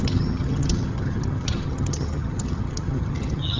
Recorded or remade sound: remade